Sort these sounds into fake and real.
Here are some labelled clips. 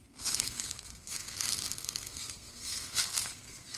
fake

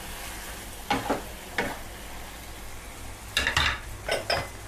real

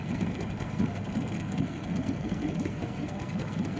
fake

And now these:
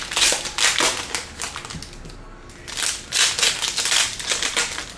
real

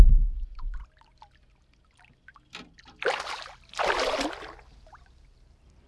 real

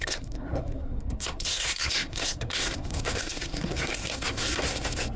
fake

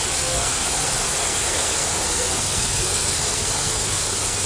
fake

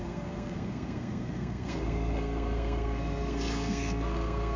fake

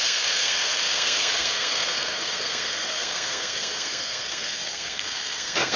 fake